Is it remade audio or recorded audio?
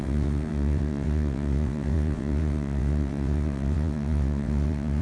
remade